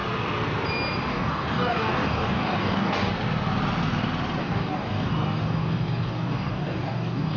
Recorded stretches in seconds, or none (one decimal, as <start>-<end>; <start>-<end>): 0.0-1.1; 3.1-4.4